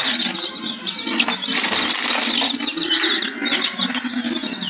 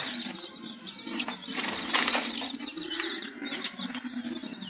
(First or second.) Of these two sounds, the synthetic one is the second